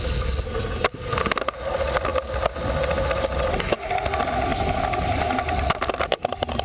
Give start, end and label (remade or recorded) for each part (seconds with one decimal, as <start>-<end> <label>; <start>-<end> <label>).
0.0-6.6 recorded